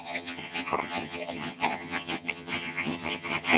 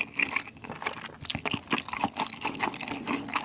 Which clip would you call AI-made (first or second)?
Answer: first